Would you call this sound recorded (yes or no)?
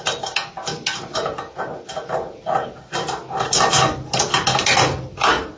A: yes